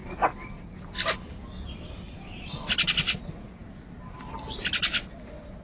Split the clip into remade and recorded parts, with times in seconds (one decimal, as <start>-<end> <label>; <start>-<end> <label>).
0.0-5.6 recorded